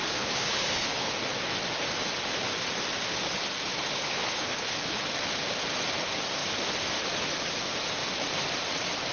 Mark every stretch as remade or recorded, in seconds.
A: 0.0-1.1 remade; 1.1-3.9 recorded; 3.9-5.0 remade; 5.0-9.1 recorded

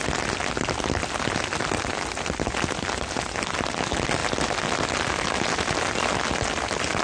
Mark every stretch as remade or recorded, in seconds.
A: 0.0-7.0 recorded